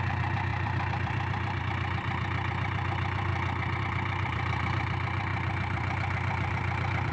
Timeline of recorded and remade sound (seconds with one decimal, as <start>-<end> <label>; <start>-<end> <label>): 0.0-3.3 remade; 3.3-3.8 recorded; 3.8-7.1 remade